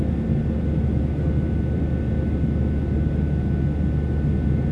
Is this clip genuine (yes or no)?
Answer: yes